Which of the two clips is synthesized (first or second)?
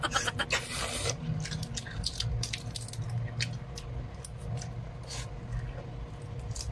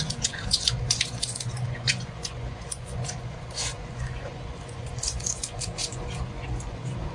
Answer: second